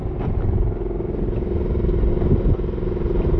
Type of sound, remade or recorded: recorded